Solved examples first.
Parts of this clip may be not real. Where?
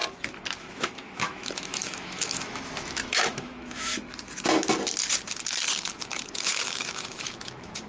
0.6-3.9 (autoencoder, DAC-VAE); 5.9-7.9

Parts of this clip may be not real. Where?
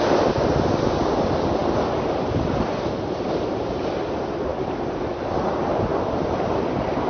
none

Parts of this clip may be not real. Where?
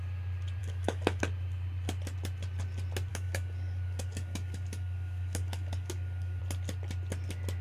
0.6-1.2 (codec, DAC); 3.1-6.4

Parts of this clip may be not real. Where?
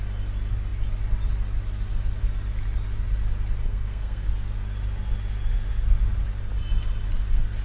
3.6-4.3 (codec, SNAC)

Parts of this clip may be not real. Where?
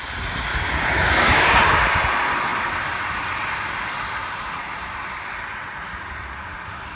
0.5-1.6 (codec, DAC)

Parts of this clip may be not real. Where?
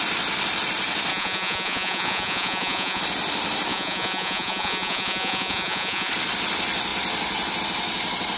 1.1-3.0 (vocoder, Vocos); 3.7-6.1